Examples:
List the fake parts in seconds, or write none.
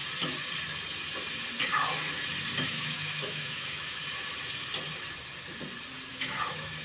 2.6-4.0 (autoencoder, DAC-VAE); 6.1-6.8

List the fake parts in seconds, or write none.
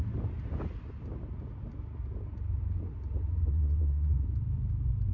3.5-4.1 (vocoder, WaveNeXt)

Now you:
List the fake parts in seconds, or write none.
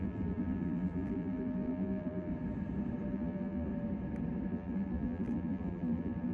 0.0-2.3 (vocoder, BigVGAN v2); 3.1-3.7; 4.5-6.3